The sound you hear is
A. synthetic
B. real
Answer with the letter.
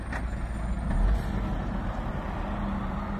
B